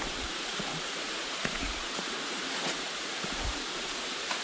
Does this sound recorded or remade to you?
remade